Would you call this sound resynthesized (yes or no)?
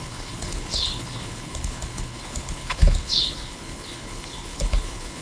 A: yes